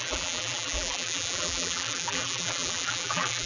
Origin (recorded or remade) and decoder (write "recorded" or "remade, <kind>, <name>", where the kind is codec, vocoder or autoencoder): remade, vocoder, BigVGAN v2